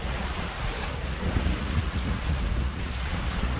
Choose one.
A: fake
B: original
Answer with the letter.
A